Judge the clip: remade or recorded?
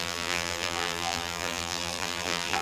remade